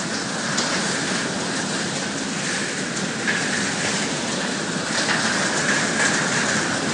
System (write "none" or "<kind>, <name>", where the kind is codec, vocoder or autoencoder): none